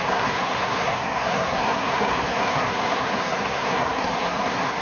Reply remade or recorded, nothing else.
remade